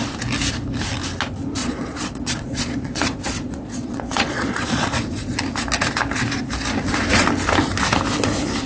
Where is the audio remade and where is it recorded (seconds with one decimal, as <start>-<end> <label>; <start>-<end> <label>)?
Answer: 0.0-1.6 recorded; 1.6-5.4 remade; 5.4-8.7 recorded